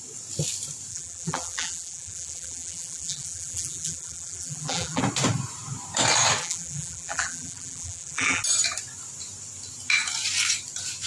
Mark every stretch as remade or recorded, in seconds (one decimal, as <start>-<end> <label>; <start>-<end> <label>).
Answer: 0.0-0.9 recorded; 0.9-5.0 remade; 5.0-6.4 recorded; 6.4-8.4 remade; 8.4-11.1 recorded